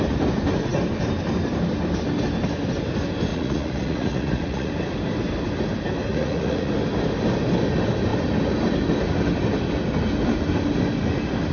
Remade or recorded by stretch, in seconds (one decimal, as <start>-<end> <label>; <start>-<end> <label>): 0.0-3.3 recorded; 3.3-4.7 remade; 4.7-6.1 recorded; 6.1-6.7 remade; 6.7-11.5 recorded